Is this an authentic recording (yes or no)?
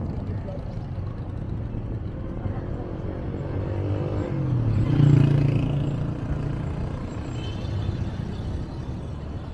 yes